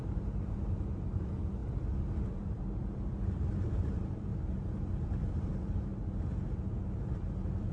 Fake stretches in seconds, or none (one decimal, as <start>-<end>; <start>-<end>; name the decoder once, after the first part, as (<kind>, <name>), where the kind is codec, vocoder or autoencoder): 0.0-1.6 (vocoder, BigVGAN v2); 2.3-4.3; 5.2-5.9; 7.0-7.7